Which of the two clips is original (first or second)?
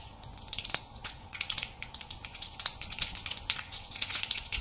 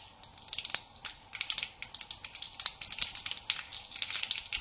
second